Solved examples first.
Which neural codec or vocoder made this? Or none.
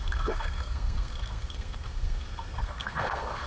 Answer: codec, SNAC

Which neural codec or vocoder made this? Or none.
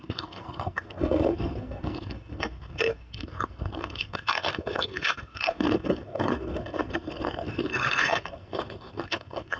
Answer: codec, SNAC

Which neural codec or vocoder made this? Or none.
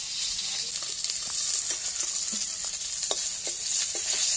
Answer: none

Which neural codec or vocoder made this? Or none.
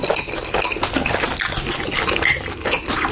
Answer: none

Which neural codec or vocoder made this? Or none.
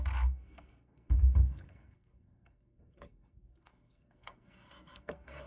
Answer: codec, SNAC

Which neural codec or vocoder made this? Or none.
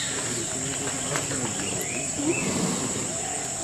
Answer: none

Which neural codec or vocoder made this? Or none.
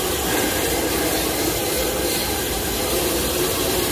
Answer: none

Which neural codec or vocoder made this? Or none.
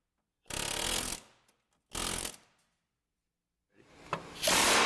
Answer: none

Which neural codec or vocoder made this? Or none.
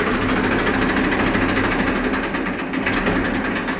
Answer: none